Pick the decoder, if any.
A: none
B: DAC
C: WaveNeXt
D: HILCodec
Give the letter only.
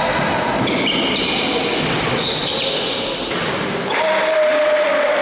A